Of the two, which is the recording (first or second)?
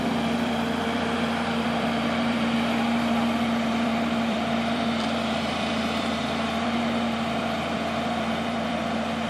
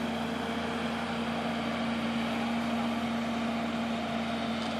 second